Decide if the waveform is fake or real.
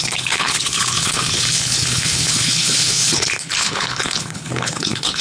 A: fake